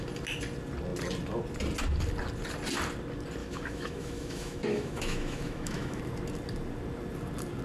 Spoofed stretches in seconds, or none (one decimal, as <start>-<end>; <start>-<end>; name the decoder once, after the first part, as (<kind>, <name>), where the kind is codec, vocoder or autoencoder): 3.4-6.0 (autoencoder, DAC-VAE)